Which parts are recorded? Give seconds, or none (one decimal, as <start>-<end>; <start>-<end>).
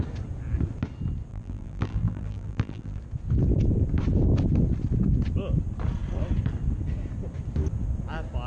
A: 0.0-1.3; 3.0-8.5